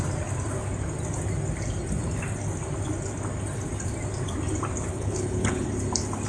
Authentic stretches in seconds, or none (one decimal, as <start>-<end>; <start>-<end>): 0.0-4.9; 5.7-6.3